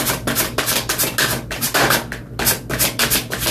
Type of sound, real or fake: real